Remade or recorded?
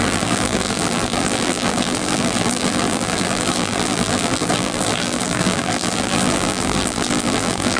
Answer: remade